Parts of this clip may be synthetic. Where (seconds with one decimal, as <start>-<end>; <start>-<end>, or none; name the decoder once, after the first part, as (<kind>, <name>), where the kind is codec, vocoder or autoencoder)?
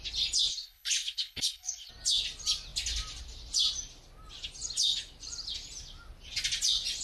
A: 0.5-1.9 (codec, HILCodec)